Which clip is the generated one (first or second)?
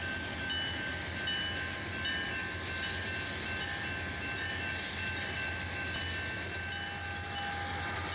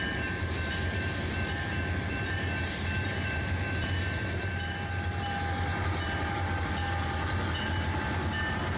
second